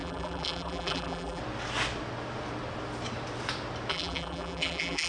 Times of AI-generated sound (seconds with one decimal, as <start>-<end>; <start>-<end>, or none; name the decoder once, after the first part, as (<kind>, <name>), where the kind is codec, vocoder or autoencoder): 0.0-1.4 (vocoder, BigVGAN v2); 3.9-5.1